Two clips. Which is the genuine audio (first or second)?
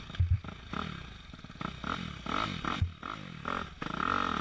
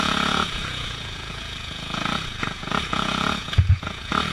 first